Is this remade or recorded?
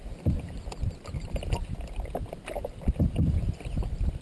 recorded